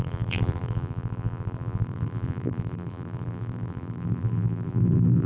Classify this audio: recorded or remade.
remade